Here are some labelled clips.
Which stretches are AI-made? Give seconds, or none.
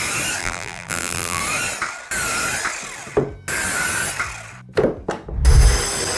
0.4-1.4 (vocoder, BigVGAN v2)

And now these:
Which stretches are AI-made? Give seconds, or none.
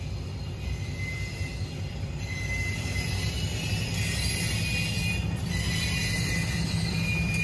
none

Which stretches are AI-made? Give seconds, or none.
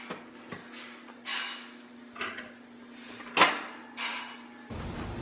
1.3-1.9 (autoencoder, DAC-VAE)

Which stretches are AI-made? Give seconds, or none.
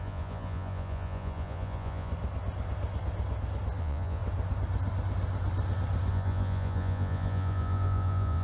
0.0-2.1 (vocoder, Vocos); 3.8-4.2; 6.1-8.4